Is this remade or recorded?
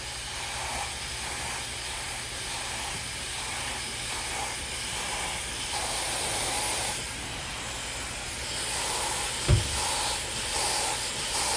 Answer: recorded